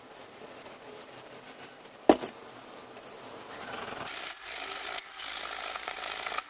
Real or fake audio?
real